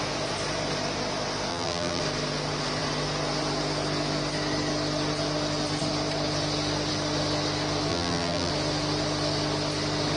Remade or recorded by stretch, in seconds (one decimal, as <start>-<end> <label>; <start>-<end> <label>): 0.0-1.5 recorded; 1.5-2.0 remade; 2.0-7.9 recorded; 7.9-8.5 remade; 8.5-10.2 recorded